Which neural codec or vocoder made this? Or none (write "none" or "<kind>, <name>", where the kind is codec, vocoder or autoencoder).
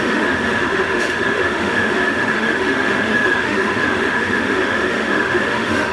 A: autoencoder, DAC-VAE